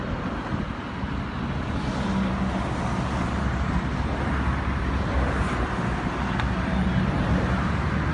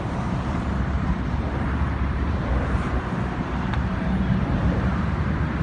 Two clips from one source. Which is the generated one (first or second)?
second